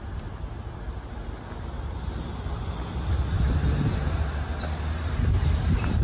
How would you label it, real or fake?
real